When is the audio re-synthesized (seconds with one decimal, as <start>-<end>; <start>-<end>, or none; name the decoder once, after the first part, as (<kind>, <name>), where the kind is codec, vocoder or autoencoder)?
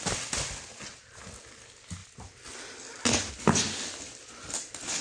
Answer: none